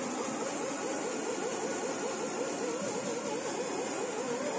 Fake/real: real